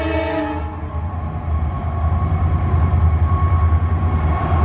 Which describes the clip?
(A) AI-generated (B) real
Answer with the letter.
B